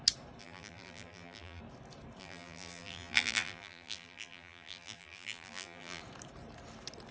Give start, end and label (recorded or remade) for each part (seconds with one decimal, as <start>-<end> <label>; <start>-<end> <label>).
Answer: 0.0-0.4 recorded; 0.4-1.6 remade; 1.6-2.2 recorded; 2.2-6.0 remade; 6.0-7.1 recorded